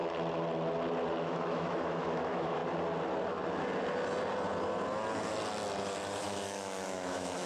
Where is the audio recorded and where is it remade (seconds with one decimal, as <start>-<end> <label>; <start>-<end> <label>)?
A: 0.0-1.2 recorded; 1.2-2.6 remade; 2.6-6.2 recorded; 6.2-7.5 remade